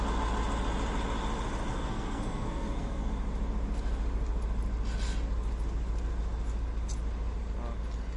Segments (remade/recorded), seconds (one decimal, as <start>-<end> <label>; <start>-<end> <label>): 0.0-1.7 recorded; 1.7-3.1 remade; 3.1-8.2 recorded